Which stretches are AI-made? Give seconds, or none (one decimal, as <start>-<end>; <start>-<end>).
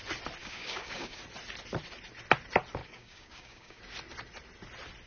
0.4-1.2; 2.8-3.8